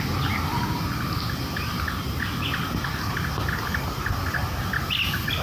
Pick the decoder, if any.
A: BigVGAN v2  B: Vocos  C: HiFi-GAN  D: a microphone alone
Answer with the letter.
D